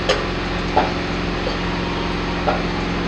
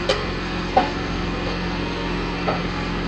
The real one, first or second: first